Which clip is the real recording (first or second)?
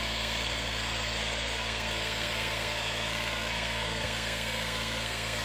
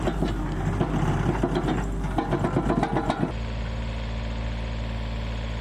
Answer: second